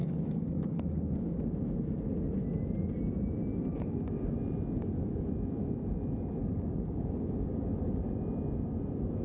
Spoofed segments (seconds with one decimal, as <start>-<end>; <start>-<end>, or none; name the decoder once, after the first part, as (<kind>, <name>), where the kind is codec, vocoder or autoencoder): 0.0-1.4 (codec, DAC); 3.7-4.3; 6.4-7.4